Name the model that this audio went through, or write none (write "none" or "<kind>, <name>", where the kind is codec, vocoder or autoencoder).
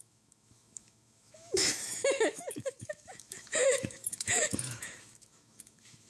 autoencoder, DAC-VAE